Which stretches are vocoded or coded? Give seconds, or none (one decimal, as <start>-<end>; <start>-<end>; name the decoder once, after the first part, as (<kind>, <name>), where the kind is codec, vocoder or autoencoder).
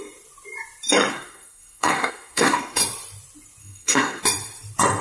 1.1-2.8 (codec, SNAC); 3.6-4.2